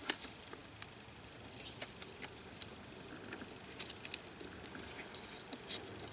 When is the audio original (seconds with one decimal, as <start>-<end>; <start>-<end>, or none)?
0.0-6.1